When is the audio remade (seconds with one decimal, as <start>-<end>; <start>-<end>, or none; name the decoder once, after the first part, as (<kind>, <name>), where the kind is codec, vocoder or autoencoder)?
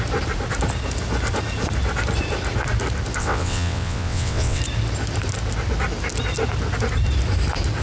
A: 3.2-4.6 (vocoder, WaveNeXt)